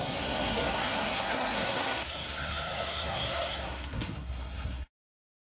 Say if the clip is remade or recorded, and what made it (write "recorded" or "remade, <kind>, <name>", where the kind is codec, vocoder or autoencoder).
remade, codec, SNAC